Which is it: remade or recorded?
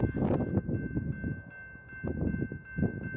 recorded